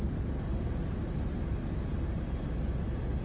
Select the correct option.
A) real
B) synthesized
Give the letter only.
A